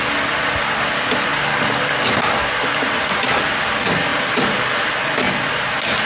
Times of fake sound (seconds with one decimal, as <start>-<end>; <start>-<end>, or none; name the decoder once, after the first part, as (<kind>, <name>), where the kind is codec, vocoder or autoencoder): none

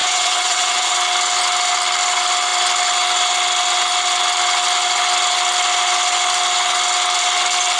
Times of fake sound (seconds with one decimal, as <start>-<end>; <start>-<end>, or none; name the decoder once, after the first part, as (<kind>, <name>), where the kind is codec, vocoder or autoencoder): 0.0-0.9 (vocoder, WaveNeXt)

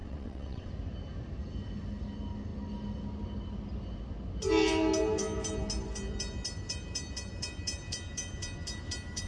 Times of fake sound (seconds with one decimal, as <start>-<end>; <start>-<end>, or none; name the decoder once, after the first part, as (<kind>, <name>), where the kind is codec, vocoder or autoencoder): 0.0-0.7 (vocoder, WaveNeXt)

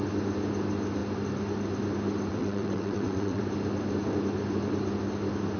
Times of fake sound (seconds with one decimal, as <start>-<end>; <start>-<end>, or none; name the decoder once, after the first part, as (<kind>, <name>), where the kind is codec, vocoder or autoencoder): 2.3-3.4 (vocoder, WaveNeXt)

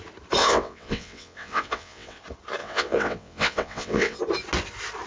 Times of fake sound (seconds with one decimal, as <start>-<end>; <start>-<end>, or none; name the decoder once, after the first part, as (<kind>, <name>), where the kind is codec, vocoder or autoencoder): 0.4-2.2 (vocoder, WaveNeXt); 2.6-4.2